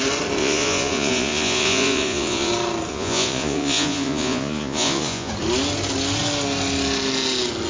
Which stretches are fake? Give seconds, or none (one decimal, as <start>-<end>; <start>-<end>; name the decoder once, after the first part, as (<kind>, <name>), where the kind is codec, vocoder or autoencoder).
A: 0.4-2.5 (vocoder, Vocos); 2.9-5.3